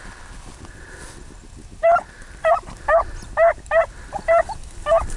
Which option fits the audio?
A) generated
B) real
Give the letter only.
B